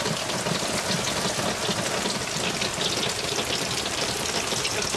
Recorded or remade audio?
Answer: recorded